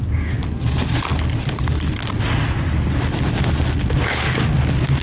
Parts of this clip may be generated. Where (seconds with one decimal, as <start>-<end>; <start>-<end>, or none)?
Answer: none